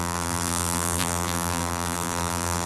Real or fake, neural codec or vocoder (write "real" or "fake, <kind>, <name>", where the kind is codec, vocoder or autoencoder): fake, vocoder, BigVGAN v2